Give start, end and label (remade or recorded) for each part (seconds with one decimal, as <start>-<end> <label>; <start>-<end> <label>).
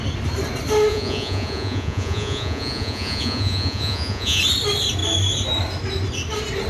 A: 0.0-0.9 recorded; 0.9-4.4 remade; 4.4-6.7 recorded